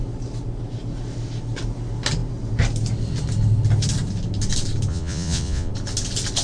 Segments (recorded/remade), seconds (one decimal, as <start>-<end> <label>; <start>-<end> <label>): 0.0-4.9 recorded; 4.9-5.7 remade; 5.7-6.4 recorded